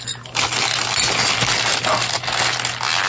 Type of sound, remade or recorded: recorded